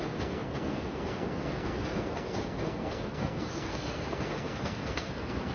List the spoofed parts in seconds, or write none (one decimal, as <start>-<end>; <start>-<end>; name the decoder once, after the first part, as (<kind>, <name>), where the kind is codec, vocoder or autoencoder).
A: 0.0-5.5 (codec, SNAC)